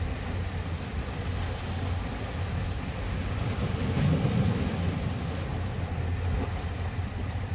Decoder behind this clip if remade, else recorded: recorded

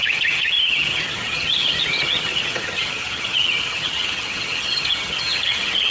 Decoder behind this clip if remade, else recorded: remade, vocoder, HiFi-GAN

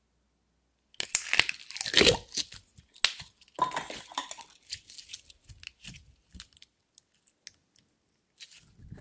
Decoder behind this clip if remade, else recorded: recorded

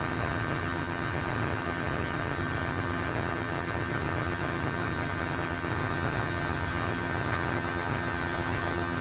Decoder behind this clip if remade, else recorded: remade, vocoder, HiFi-GAN